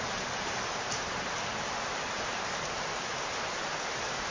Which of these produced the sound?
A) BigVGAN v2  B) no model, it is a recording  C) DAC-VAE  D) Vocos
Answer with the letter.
A